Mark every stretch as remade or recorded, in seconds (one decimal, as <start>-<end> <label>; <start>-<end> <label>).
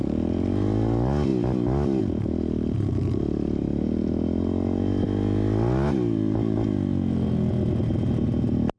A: 0.0-8.8 recorded